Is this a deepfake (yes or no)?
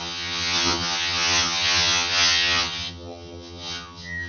yes